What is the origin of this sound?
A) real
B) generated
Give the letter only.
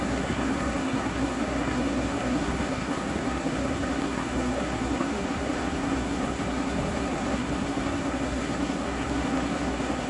B